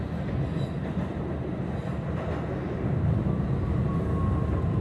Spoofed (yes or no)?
no